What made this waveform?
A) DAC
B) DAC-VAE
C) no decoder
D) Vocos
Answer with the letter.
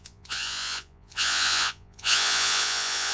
D